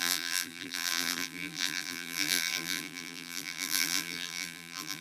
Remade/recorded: remade